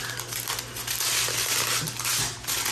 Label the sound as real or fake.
real